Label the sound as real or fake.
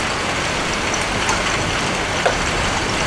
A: real